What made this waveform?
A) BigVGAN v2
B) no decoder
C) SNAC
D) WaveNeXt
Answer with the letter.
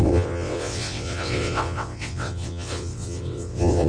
D